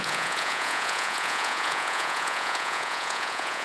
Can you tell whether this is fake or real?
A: fake